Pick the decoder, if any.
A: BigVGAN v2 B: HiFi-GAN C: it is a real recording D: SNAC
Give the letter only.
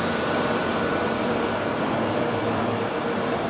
A